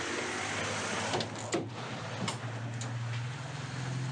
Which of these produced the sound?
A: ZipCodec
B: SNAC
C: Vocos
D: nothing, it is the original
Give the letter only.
D